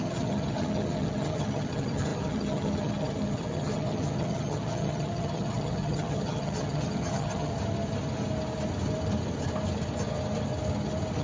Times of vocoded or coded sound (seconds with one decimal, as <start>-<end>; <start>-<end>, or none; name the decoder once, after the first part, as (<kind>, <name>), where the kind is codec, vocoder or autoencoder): 0.0-7.5 (vocoder, HiFi-GAN)